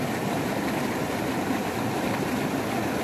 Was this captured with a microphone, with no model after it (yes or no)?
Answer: yes